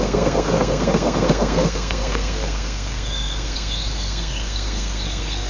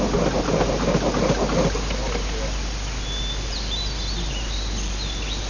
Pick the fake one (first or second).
first